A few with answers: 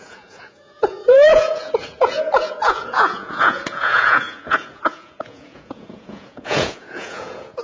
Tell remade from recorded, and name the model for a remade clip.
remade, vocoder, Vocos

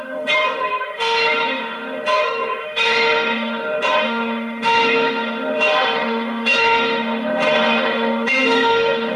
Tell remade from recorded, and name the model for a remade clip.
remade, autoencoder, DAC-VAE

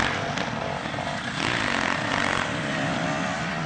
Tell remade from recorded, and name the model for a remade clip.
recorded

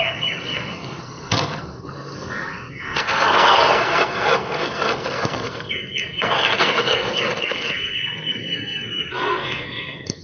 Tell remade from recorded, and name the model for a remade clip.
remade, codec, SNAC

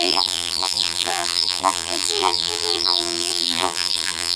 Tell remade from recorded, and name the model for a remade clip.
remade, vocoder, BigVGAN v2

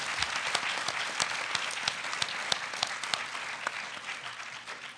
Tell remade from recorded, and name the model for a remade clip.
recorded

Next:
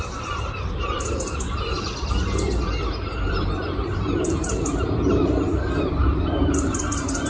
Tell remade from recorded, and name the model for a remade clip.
remade, vocoder, BigVGAN v2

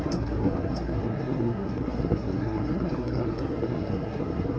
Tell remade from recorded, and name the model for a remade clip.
remade, codec, SNAC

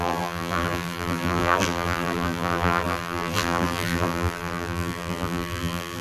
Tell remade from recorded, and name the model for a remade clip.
remade, vocoder, BigVGAN v2